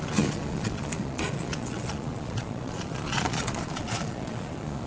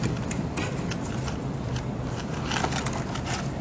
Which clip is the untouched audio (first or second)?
second